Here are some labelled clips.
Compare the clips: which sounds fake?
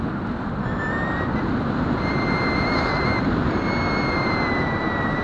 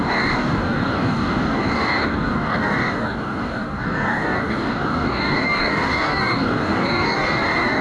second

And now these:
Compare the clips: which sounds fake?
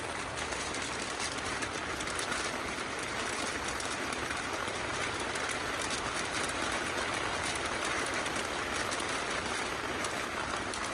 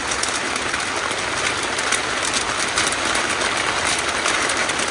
first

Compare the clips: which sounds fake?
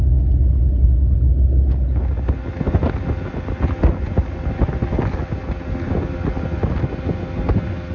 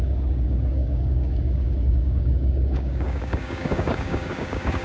second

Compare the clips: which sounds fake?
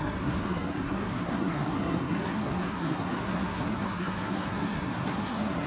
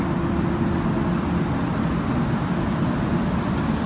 first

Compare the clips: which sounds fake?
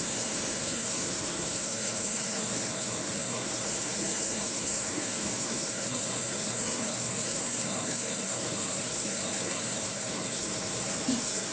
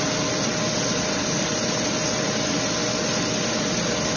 first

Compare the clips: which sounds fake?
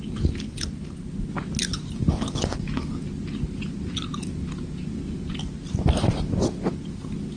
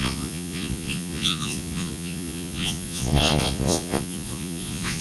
second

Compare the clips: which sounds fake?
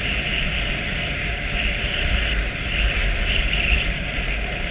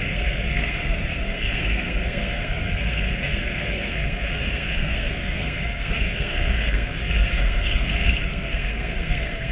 second